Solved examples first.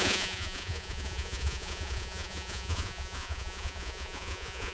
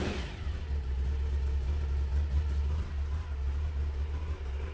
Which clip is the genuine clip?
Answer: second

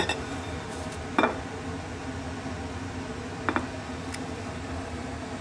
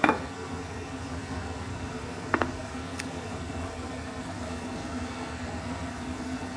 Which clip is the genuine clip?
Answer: first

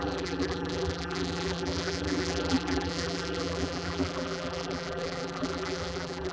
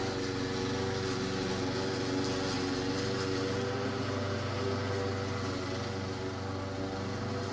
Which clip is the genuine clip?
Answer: second